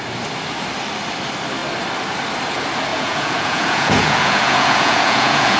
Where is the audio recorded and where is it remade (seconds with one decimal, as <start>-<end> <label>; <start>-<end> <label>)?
0.0-2.9 recorded; 2.9-5.6 remade